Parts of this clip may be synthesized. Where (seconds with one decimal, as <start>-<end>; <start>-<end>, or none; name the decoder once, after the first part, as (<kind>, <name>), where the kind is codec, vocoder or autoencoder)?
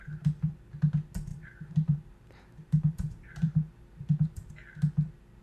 0.0-0.7 (vocoder, BigVGAN v2); 1.3-4.5